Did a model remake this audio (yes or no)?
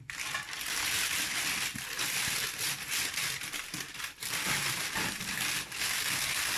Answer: yes